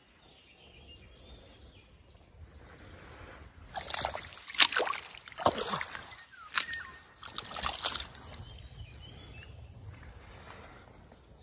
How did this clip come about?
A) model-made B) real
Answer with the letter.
B